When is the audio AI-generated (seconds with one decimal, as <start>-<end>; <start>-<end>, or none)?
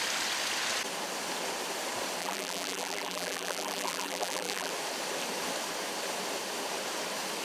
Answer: 2.2-4.7